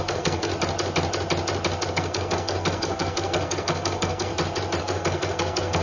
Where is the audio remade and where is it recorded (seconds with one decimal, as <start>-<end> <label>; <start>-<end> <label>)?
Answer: 0.0-0.5 remade; 0.5-1.9 recorded; 1.9-4.3 remade; 4.3-4.8 recorded; 4.8-5.8 remade